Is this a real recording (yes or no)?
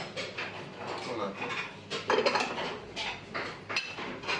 no